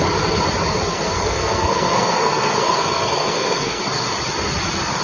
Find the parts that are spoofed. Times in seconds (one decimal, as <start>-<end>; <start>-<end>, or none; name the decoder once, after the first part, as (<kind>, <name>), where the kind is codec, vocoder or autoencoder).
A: 0.9-3.8 (codec, SNAC)